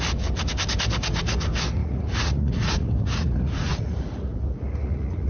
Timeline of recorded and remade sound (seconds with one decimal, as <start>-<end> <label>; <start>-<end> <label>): 0.0-1.8 recorded; 1.8-5.3 remade